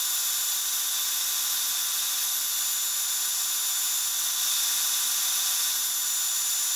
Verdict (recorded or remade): recorded